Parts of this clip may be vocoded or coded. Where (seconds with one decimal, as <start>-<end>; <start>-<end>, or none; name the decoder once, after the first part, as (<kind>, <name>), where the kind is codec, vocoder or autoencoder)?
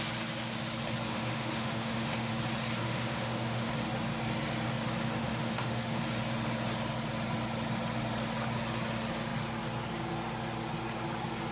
1.1-2.3 (autoencoder, DAC-VAE); 2.8-3.7; 5.2-6.0